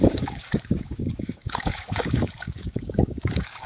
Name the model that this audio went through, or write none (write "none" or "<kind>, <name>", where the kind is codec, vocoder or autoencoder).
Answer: codec, DAC